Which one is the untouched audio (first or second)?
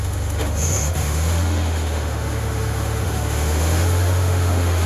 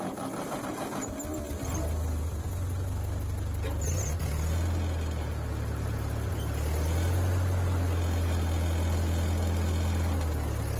second